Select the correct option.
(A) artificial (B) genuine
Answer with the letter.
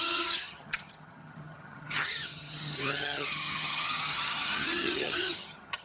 A